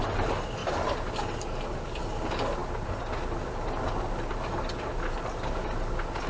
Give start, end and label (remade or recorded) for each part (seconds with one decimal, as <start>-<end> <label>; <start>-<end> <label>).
0.0-6.3 recorded